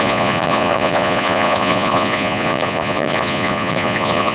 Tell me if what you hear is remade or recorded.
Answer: remade